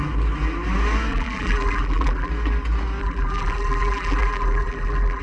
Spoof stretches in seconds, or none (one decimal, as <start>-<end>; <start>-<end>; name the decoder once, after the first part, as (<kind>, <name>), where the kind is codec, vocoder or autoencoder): 1.1-2.3 (vocoder, BigVGAN v2); 3.0-5.2